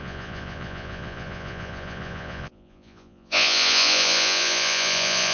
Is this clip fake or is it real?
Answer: fake